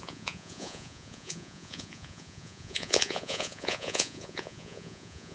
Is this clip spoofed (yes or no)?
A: yes